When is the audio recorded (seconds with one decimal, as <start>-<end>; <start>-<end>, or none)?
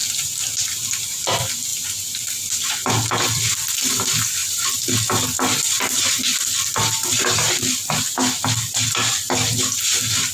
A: 0.0-10.3